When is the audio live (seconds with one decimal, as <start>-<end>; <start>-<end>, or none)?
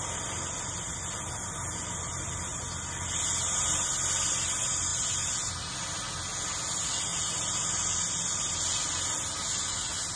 0.0-10.2